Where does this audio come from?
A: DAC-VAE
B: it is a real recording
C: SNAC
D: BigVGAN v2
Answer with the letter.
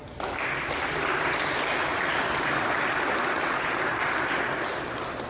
B